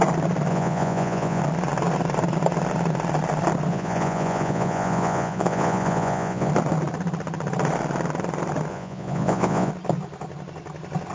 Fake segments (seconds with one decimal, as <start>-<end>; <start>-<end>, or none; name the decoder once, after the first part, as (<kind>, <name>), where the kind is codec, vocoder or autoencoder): 0.5-1.4 (vocoder, Vocos); 3.7-6.5; 8.7-9.7